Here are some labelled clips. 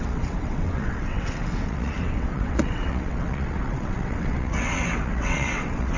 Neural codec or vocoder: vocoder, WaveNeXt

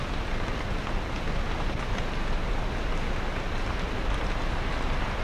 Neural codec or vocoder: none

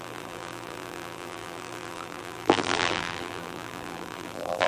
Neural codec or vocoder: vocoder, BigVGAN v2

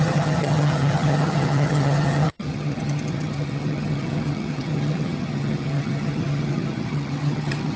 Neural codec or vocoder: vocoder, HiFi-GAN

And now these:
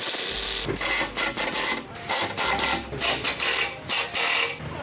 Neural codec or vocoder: none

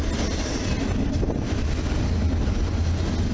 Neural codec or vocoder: none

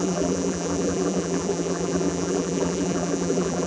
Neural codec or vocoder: vocoder, BigVGAN v2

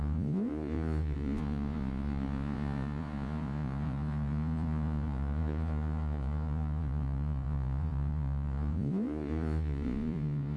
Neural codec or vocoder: vocoder, Vocos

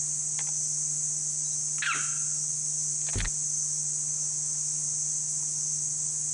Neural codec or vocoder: none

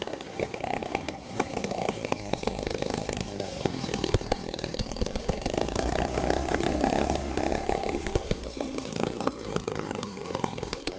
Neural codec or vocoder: codec, SNAC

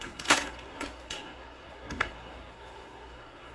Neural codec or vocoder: codec, SNAC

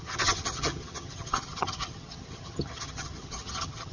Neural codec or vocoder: vocoder, HiFi-GAN